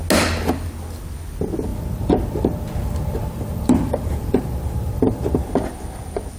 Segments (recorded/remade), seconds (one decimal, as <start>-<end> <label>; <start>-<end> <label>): 0.0-1.7 recorded; 1.7-5.5 remade; 5.5-6.4 recorded